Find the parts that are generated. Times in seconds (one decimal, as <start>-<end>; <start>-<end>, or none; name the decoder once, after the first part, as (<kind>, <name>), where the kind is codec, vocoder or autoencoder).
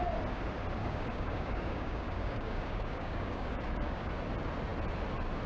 0.8-4.1 (codec, DAC)